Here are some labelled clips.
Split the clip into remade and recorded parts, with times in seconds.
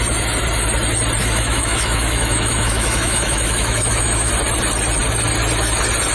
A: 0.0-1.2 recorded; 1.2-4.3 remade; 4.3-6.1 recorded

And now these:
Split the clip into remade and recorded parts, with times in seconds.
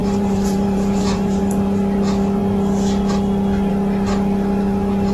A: 0.0-1.4 remade; 1.4-5.1 recorded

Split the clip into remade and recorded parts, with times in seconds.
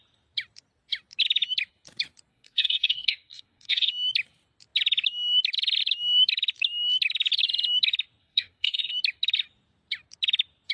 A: 0.0-2.3 recorded; 2.3-3.9 remade; 3.9-8.2 recorded; 8.2-8.9 remade; 8.9-10.7 recorded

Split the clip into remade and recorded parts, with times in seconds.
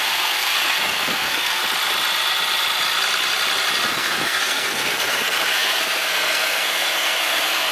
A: 0.0-1.6 remade; 1.6-3.9 recorded; 3.9-7.7 remade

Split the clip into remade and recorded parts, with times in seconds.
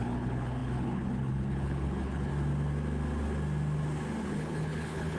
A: 0.0-2.3 remade; 2.3-4.2 recorded; 4.2-5.2 remade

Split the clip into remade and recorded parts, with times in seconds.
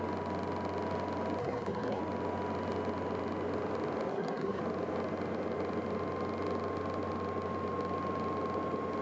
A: 0.0-1.4 recorded; 1.4-2.0 remade; 2.0-4.1 recorded; 4.1-4.6 remade; 4.6-9.0 recorded